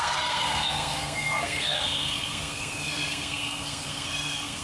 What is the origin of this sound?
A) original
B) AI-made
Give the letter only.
B